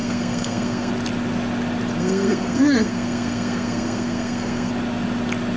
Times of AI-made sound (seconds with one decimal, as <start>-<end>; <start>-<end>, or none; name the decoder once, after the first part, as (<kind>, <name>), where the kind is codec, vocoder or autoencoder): 0.0-0.9 (codec, SNAC); 2.0-4.7